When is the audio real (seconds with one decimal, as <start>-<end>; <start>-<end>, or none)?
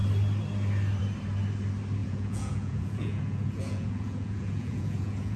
0.0-2.0